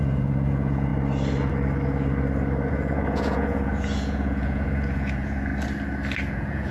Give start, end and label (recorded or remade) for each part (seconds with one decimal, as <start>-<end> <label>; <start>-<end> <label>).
0.0-0.9 remade; 0.9-2.7 recorded; 2.7-5.5 remade; 5.5-6.3 recorded; 6.3-6.7 remade